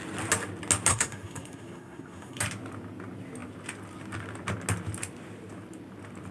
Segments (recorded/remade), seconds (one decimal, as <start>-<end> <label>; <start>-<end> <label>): 0.0-0.9 recorded; 0.9-2.4 remade; 2.4-6.3 recorded